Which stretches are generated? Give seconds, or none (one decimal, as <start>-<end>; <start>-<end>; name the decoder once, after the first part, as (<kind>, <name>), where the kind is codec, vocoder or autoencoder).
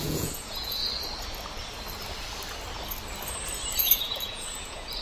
0.0-0.8 (vocoder, Vocos); 3.8-5.0